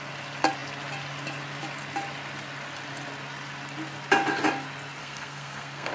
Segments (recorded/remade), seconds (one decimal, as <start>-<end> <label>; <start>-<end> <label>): 0.0-5.0 recorded; 5.0-5.9 remade